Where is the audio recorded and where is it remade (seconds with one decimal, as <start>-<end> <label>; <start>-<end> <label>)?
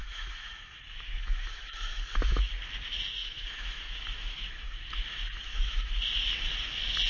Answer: 0.0-2.5 remade; 2.5-3.2 recorded; 3.2-4.9 remade; 4.9-5.5 recorded; 5.5-6.0 remade; 6.0-7.1 recorded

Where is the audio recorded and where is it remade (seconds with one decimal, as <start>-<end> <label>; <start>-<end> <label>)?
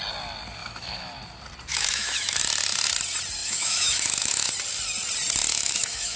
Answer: 0.0-0.6 recorded; 0.6-1.2 remade; 1.2-1.7 recorded; 1.7-2.4 remade; 2.4-3.4 recorded; 3.4-4.5 remade; 4.5-5.5 recorded; 5.5-6.2 remade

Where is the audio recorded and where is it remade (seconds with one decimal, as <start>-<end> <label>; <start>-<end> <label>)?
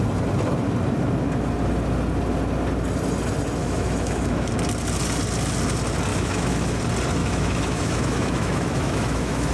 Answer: 0.0-3.6 recorded; 3.6-4.5 remade; 4.5-6.1 recorded; 6.1-6.8 remade; 6.8-7.2 recorded; 7.2-9.5 remade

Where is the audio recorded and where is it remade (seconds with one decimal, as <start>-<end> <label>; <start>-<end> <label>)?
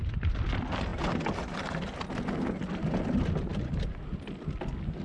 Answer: 0.0-5.0 recorded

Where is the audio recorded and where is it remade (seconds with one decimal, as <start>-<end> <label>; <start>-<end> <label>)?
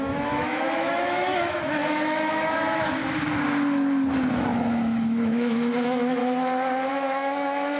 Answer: 0.0-3.0 remade; 3.0-4.3 recorded; 4.3-6.2 remade; 6.2-6.9 recorded; 6.9-7.8 remade